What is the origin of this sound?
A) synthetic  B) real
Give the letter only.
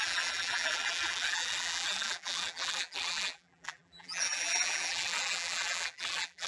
A